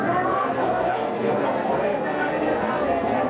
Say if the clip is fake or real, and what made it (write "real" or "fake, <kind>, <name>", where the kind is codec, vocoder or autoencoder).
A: fake, codec, SNAC